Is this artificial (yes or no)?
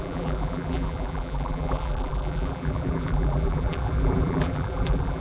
yes